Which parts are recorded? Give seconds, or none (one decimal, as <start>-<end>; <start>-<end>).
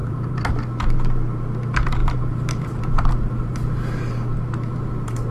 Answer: 0.5-2.0